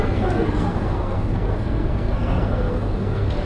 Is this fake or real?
fake